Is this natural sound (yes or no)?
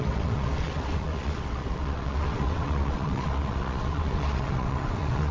no